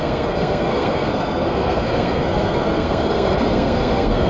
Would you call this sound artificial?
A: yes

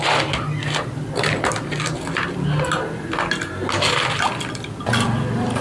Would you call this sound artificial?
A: no